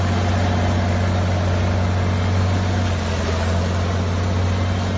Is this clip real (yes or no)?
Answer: yes